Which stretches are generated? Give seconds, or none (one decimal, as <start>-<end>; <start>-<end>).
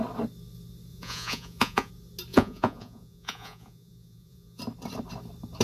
0.9-1.9; 2.3-4.6